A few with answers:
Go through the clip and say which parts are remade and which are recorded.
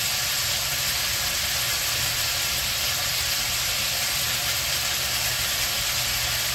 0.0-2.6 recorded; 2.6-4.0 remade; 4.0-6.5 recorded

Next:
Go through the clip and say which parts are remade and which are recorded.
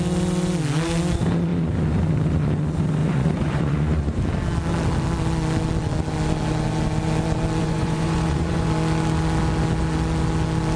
0.0-3.0 recorded; 3.0-4.2 remade; 4.2-7.6 recorded; 7.6-8.7 remade; 8.7-10.8 recorded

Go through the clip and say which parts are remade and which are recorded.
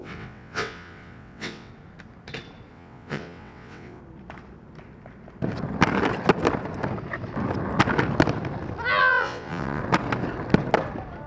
0.0-1.7 remade; 1.7-2.7 recorded; 2.7-4.0 remade; 4.0-9.0 recorded; 9.0-9.8 remade; 9.8-11.3 recorded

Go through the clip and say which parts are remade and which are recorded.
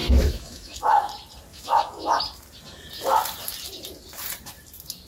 0.0-1.1 remade; 1.1-1.5 recorded; 1.5-2.2 remade; 2.2-5.1 recorded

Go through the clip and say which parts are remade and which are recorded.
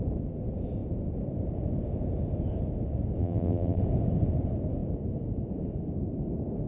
0.0-3.2 recorded; 3.2-3.8 remade; 3.8-6.7 recorded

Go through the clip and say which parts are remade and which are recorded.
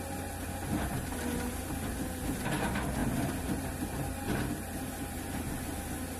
0.0-6.2 recorded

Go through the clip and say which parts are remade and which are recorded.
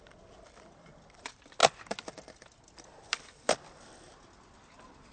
0.0-5.1 recorded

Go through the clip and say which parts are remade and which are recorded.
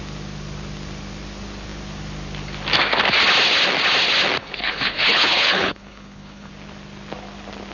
0.0-4.4 recorded; 4.4-6.5 remade; 6.5-7.7 recorded